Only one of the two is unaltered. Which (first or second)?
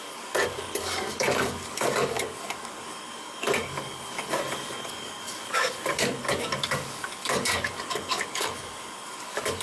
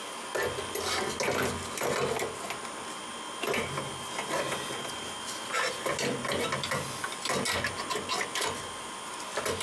second